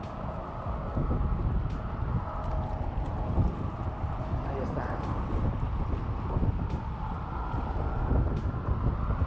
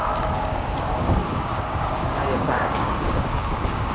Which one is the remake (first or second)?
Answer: second